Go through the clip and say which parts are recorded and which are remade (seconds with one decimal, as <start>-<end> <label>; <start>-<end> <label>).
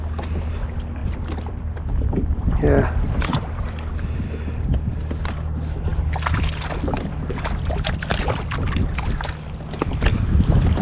0.0-1.0 recorded; 1.0-3.9 remade; 3.9-10.8 recorded